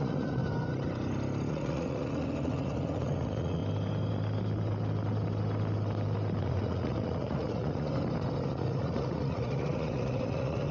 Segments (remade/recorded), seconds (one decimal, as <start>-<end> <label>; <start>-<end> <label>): 0.0-0.4 remade; 0.4-1.5 recorded; 1.5-3.6 remade; 3.6-6.4 recorded; 6.4-7.9 remade; 7.9-8.4 recorded; 8.4-10.7 remade